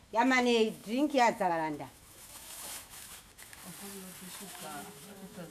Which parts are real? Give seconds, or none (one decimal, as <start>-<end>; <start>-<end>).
3.6-4.4